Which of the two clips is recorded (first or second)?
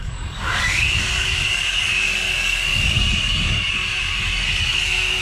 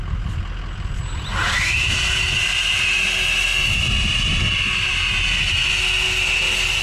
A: second